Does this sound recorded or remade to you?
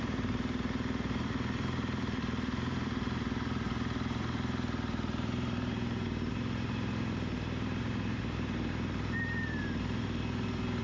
remade